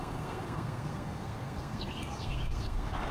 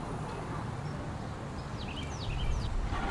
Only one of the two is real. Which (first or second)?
second